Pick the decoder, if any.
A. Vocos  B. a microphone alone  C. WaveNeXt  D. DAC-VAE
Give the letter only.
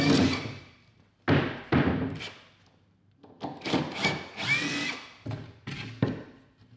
B